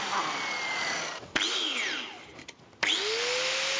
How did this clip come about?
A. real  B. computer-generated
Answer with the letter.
A